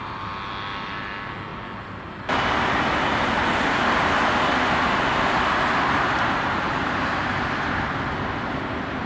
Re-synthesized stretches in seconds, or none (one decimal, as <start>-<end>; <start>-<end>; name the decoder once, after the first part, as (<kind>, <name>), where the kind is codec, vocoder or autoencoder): none